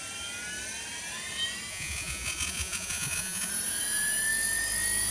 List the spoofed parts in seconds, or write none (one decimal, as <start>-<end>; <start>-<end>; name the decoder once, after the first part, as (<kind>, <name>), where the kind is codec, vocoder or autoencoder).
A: 1.7-3.5 (vocoder, Vocos)